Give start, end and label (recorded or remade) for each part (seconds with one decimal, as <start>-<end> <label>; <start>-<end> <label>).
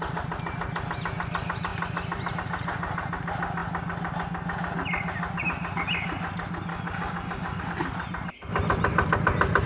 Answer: 0.0-6.7 recorded; 6.7-7.6 remade; 7.6-9.7 recorded